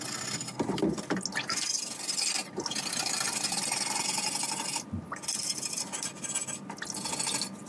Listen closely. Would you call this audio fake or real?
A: real